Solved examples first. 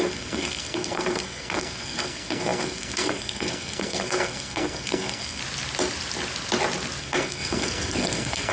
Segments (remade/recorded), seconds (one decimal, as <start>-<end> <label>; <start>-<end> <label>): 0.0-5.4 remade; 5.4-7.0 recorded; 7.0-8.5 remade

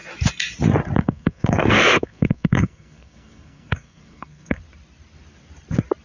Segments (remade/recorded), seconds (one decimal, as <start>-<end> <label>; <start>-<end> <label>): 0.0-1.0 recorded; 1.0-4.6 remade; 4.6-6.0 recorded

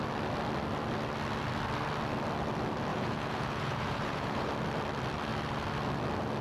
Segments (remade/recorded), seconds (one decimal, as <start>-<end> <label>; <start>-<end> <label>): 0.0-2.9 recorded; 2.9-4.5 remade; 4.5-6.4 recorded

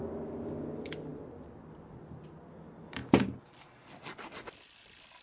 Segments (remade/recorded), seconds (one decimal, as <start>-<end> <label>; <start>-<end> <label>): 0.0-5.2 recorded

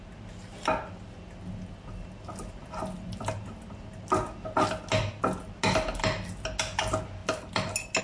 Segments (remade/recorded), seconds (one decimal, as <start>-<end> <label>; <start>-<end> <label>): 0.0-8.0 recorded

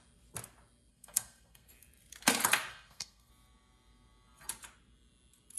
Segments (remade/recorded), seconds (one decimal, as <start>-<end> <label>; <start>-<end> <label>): 0.0-0.9 recorded; 0.9-1.7 remade; 1.7-2.7 recorded; 2.7-3.3 remade; 3.3-5.6 recorded

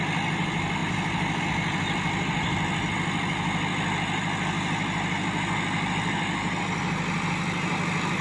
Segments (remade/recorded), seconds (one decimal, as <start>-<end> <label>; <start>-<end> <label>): 0.0-8.2 recorded